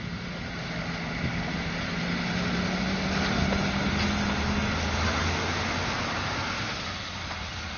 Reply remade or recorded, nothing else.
recorded